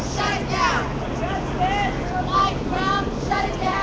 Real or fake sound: real